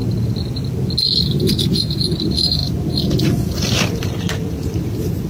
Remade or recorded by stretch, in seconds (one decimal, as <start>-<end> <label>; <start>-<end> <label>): 0.0-2.2 recorded; 2.2-2.6 remade; 2.6-3.1 recorded; 3.1-5.3 remade